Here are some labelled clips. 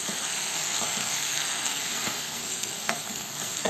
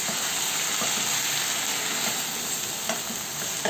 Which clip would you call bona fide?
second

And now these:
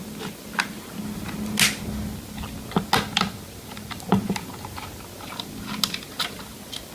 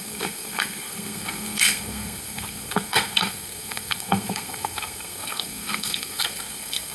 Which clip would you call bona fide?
first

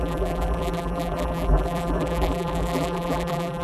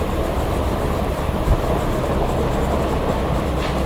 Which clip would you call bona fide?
second